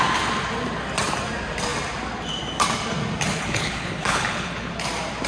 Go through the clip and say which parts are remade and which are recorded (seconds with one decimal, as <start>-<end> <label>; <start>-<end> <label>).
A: 0.0-3.4 recorded; 3.4-4.7 remade; 4.7-5.3 recorded